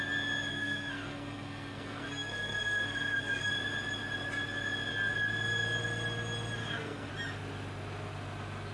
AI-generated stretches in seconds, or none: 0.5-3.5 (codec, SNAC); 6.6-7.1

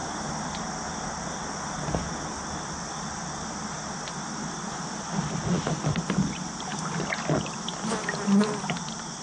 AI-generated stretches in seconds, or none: 5.0-9.2 (vocoder, BigVGAN v2)

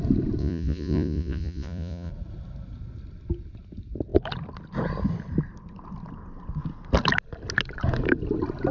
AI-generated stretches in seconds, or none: 0.4-2.1 (vocoder, Vocos)

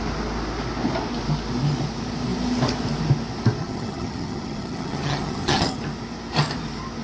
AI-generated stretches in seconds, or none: 3.6-5.8 (vocoder, HiFi-GAN)

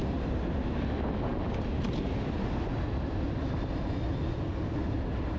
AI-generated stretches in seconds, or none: 0.0-0.7 (vocoder, BigVGAN v2); 1.3-3.6; 4.8-5.4